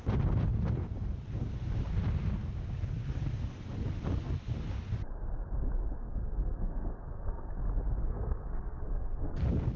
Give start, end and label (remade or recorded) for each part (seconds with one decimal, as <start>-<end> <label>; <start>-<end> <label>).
0.0-6.0 recorded; 6.0-7.5 remade; 7.5-8.0 recorded; 8.0-9.4 remade; 9.4-9.8 recorded